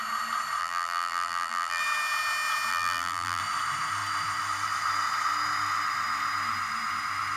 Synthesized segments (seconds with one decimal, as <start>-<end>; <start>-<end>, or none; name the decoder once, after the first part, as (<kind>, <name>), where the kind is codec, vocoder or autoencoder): 0.6-1.8 (vocoder, BigVGAN v2); 2.7-3.4